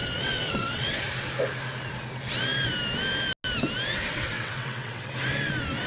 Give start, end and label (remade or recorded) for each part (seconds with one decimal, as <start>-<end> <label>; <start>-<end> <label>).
0.0-1.0 remade; 1.0-4.1 recorded; 4.1-5.1 remade; 5.1-5.9 recorded